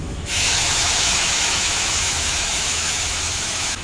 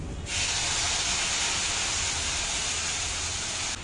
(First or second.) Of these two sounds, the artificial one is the first